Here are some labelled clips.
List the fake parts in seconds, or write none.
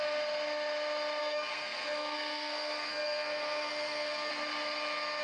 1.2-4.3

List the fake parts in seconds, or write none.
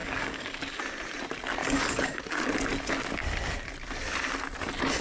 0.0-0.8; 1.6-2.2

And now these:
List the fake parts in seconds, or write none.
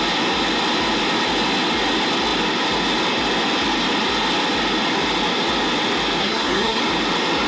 6.2-6.8